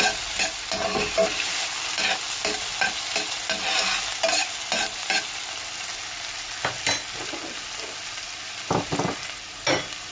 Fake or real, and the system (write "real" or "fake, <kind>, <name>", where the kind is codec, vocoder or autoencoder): real